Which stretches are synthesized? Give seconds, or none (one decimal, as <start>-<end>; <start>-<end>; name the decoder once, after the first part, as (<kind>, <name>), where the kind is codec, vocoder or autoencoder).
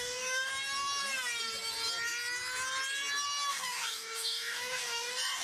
0.0-0.5 (codec, DAC); 3.5-5.4